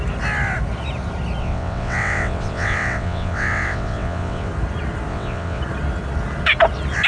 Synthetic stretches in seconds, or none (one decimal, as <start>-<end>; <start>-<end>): 1.4-4.5; 5.1-5.6